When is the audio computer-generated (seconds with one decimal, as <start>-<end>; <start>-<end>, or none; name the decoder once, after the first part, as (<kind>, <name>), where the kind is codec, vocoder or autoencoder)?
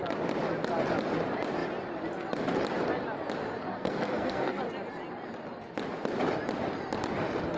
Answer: 3.7-4.6 (codec, SNAC)